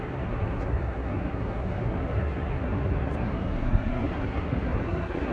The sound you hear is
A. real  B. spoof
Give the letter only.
B